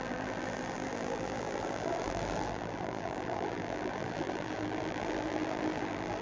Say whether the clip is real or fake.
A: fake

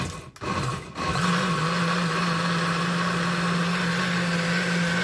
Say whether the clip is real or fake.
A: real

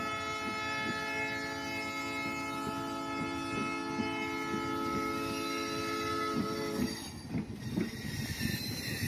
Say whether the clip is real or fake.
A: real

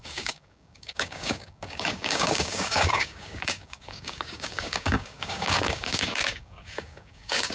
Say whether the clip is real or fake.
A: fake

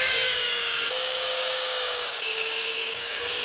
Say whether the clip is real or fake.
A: fake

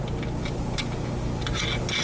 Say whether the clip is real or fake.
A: real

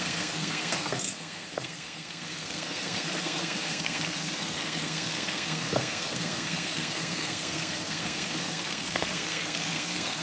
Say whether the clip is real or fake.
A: fake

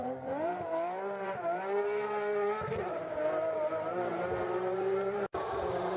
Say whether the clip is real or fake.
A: fake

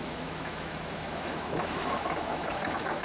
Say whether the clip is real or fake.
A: fake